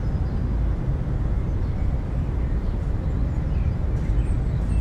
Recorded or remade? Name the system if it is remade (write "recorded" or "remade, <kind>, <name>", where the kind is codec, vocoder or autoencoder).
recorded